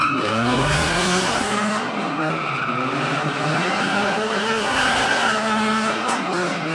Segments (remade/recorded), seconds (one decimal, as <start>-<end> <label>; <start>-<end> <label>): 0.0-2.3 remade; 2.3-3.2 recorded; 3.2-6.7 remade